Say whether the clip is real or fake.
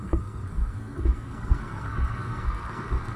fake